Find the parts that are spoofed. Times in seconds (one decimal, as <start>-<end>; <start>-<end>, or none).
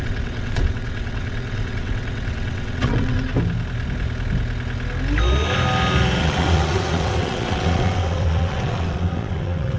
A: 0.0-3.3; 6.2-9.8